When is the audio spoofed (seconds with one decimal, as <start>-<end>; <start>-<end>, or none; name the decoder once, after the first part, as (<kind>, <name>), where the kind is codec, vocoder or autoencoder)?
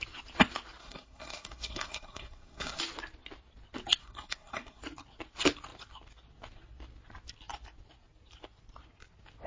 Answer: 0.8-2.8 (codec, SNAC); 4.0-4.8